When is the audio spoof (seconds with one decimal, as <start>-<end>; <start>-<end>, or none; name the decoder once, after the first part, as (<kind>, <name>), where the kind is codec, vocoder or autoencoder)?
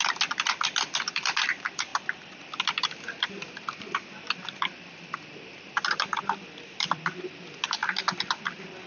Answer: 0.0-1.9 (vocoder, BigVGAN v2); 2.5-7.8